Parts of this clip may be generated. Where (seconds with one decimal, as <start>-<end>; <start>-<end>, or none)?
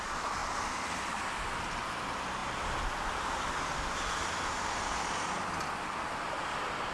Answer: none